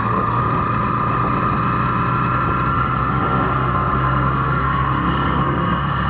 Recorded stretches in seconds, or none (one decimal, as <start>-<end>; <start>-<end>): 0.4-2.7